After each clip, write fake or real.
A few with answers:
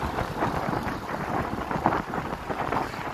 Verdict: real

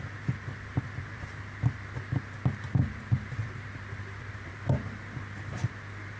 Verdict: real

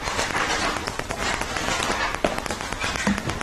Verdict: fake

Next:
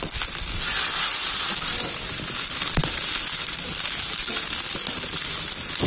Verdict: real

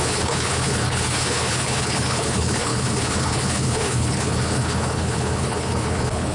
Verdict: fake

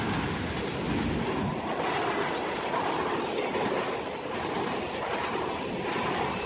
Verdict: real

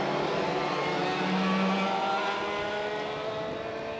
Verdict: real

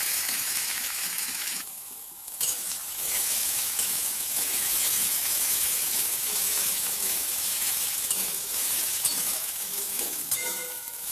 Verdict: fake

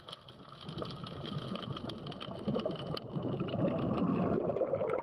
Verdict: real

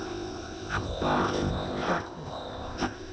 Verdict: fake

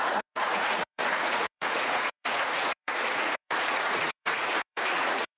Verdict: fake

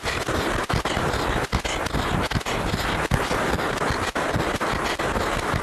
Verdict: real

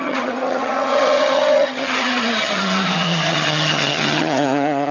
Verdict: fake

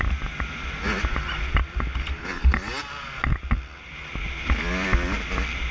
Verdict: real